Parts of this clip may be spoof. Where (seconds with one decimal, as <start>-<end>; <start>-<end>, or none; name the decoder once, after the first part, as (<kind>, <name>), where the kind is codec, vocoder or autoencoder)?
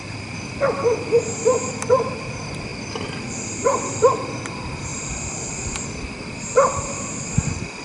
0.0-7.8 (vocoder, BigVGAN v2)